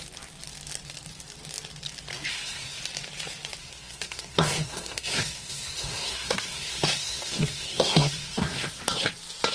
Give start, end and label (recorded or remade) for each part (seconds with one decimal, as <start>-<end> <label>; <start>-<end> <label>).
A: 0.0-2.3 recorded; 2.3-2.8 remade; 2.8-3.6 recorded; 3.6-8.8 remade; 8.8-9.5 recorded

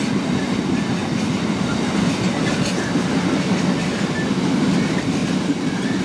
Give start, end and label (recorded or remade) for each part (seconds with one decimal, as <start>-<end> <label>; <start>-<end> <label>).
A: 0.0-6.0 recorded

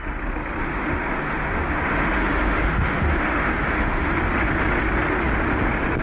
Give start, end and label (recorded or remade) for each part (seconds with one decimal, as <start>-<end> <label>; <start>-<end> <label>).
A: 0.0-0.6 recorded; 0.6-4.1 remade; 4.1-6.0 recorded

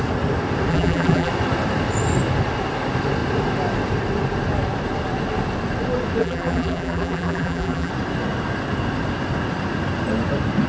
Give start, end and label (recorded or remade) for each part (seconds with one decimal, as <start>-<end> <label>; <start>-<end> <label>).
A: 0.0-0.7 recorded; 0.7-1.3 remade; 1.3-6.2 recorded; 6.2-7.9 remade; 7.9-10.7 recorded

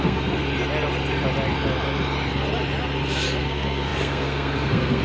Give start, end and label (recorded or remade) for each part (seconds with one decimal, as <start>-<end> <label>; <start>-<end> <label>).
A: 0.0-0.4 remade; 0.4-3.4 recorded; 3.4-5.0 remade

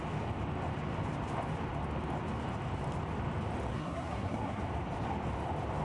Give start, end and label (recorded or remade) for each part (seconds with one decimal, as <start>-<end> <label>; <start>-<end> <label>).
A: 0.0-3.7 recorded; 3.7-4.6 remade; 4.6-5.8 recorded